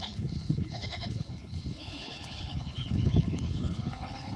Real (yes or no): no